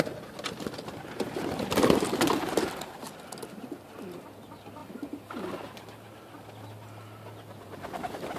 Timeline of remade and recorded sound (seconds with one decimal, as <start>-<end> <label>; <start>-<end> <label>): 0.0-8.4 recorded